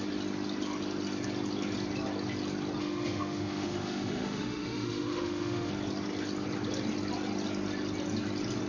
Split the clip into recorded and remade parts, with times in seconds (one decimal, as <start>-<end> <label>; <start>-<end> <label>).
0.0-2.8 recorded; 2.8-5.7 remade; 5.7-8.7 recorded